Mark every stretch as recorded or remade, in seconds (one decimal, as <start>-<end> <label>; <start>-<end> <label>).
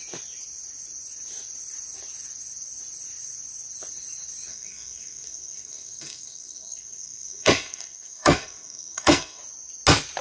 0.0-4.5 recorded; 4.5-9.4 remade; 9.4-10.2 recorded